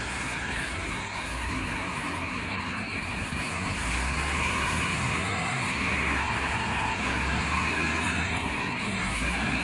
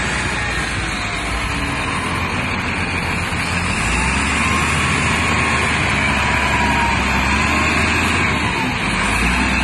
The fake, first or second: first